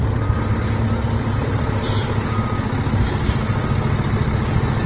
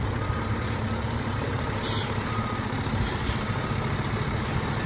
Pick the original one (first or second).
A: first